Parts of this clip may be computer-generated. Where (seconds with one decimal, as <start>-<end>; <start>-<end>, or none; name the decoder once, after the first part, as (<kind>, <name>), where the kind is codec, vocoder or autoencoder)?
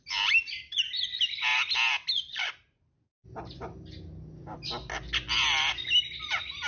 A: none